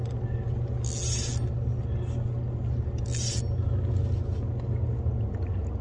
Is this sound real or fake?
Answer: real